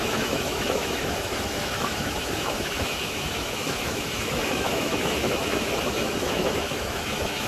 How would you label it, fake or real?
fake